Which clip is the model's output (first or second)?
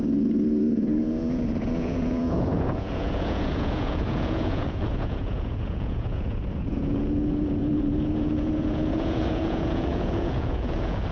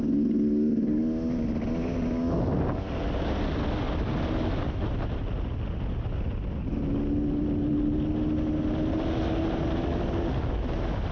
first